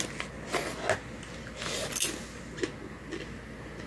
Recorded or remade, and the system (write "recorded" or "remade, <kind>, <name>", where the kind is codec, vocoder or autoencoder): recorded